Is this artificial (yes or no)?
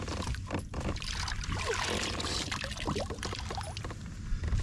no